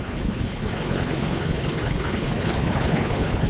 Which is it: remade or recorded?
remade